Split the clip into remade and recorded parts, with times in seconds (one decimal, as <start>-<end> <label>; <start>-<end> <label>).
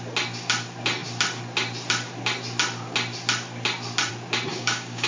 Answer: 0.0-4.5 recorded; 4.5-5.1 remade